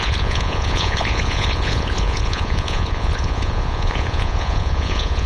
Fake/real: fake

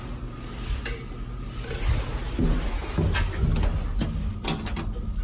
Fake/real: real